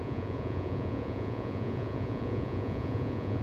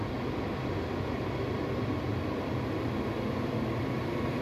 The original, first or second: second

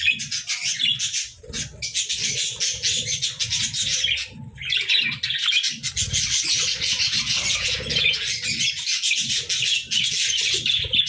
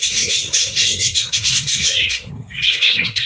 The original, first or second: first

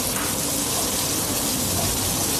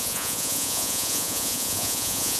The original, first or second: first